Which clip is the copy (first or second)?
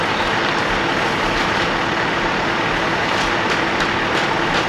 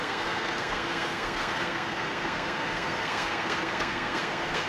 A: second